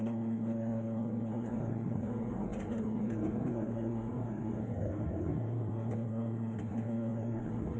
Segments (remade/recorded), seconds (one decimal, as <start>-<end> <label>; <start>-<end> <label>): 0.0-7.8 remade